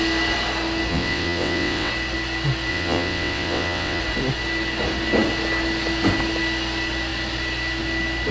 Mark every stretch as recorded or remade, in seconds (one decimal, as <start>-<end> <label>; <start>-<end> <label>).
0.0-0.9 recorded; 0.9-1.9 remade; 1.9-2.7 recorded; 2.7-4.0 remade; 4.0-8.3 recorded